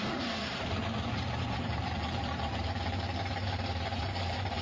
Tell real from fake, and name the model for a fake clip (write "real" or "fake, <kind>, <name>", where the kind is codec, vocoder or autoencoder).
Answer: fake, vocoder, BigVGAN v2